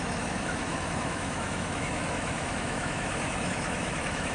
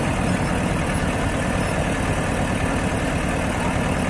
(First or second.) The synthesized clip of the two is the first